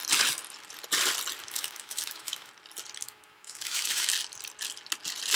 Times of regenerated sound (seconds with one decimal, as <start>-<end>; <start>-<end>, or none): 1.4-2.5; 3.0-4.1